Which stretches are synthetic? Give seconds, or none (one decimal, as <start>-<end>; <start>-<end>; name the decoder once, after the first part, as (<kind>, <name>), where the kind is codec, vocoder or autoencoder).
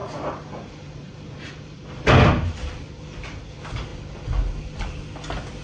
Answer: 0.0-1.5 (vocoder, BigVGAN v2)